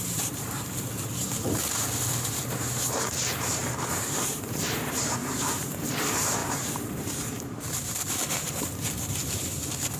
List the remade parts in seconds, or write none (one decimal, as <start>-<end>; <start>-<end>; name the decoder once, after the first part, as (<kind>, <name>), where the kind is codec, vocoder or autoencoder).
0.0-10.0 (vocoder, BigVGAN v2)